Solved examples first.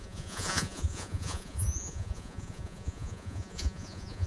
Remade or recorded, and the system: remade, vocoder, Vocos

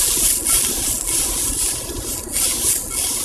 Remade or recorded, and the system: recorded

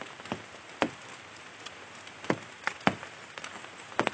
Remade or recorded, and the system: recorded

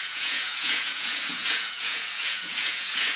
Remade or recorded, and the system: remade, vocoder, Vocos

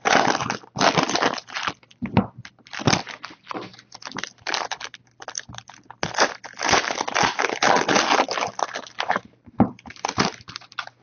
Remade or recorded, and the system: recorded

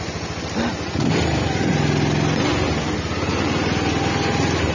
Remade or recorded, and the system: recorded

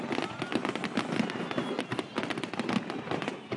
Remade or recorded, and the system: recorded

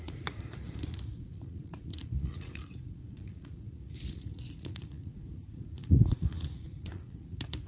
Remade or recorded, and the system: remade, vocoder, Vocos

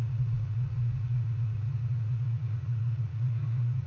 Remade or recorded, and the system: remade, vocoder, Vocos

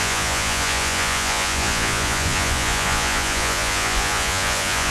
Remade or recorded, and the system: remade, vocoder, Vocos